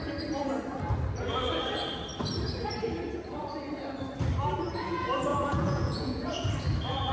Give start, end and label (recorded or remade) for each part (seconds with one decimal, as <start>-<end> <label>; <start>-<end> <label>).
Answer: 0.0-5.3 recorded; 5.3-6.5 remade; 6.5-7.1 recorded